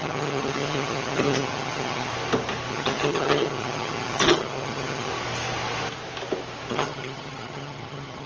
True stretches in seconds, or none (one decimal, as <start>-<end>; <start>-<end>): 2.1-2.7; 5.1-6.7